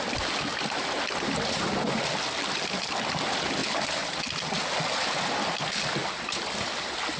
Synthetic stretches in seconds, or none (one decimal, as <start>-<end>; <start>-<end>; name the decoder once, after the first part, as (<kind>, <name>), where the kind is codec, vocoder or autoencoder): none